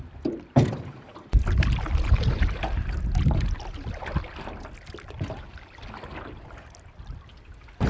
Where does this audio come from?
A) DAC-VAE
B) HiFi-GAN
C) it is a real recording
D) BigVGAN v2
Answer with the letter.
C